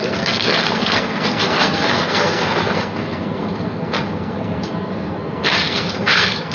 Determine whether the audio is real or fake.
fake